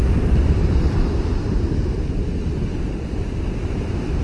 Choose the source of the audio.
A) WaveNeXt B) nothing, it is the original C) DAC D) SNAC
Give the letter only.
B